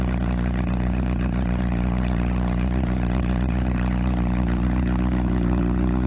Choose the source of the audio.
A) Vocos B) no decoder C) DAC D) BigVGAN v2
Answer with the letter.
A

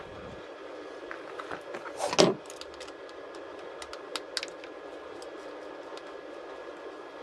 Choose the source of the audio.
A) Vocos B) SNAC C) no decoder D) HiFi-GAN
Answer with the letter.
C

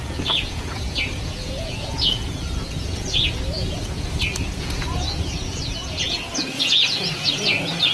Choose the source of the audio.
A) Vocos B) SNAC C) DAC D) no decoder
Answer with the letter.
A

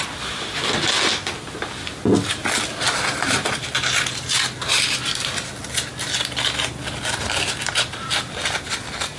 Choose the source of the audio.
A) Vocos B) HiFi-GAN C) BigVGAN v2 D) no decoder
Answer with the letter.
D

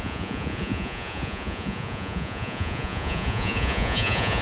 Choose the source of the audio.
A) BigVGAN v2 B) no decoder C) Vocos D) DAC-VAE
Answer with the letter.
C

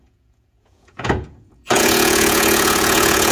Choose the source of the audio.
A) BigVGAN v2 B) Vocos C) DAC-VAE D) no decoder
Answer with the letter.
B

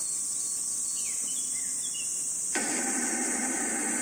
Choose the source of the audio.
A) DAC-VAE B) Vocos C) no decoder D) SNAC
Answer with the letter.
C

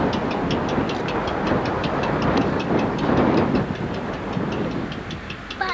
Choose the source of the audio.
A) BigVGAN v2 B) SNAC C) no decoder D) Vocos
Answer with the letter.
C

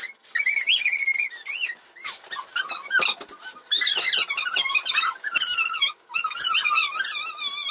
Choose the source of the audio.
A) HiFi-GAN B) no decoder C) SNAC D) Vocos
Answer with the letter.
B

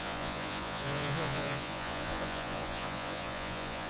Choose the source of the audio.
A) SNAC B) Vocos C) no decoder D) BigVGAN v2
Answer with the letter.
B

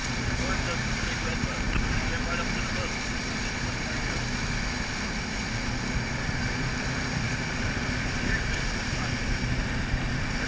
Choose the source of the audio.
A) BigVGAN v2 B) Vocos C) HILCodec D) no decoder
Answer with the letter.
D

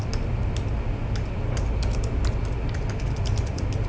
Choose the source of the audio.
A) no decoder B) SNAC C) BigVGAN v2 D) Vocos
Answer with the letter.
A